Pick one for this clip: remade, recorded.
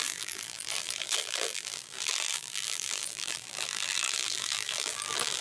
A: remade